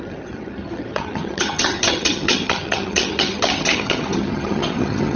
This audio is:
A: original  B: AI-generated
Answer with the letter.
B